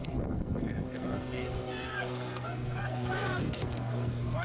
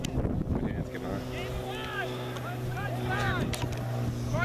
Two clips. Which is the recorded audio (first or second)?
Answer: second